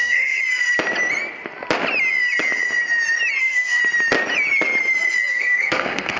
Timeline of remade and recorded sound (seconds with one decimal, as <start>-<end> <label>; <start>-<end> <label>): 0.0-0.4 remade; 0.4-3.4 recorded; 3.4-3.8 remade; 3.8-5.3 recorded; 5.3-6.2 remade